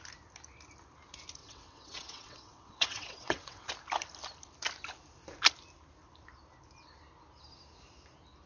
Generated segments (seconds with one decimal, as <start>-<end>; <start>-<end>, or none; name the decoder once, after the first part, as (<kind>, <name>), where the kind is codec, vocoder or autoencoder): 1.4-3.7 (vocoder, WaveNeXt)